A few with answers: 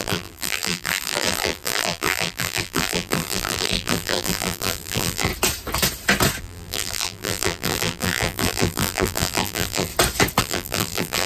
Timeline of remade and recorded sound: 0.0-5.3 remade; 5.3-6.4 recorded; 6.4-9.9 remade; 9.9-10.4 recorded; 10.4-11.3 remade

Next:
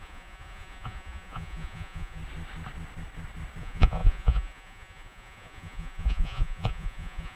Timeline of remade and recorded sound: 0.0-2.2 remade; 2.2-3.6 recorded; 3.6-7.4 remade

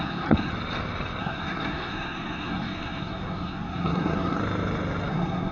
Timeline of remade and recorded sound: 0.0-0.5 remade; 0.5-1.2 recorded; 1.2-4.4 remade; 4.4-5.1 recorded; 5.1-5.5 remade

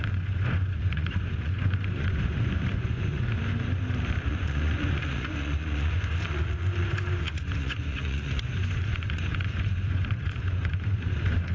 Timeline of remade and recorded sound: 0.0-3.3 remade; 3.3-4.3 recorded; 4.3-11.5 remade